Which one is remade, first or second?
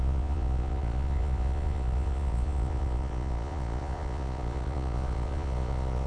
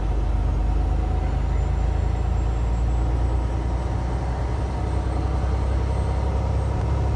first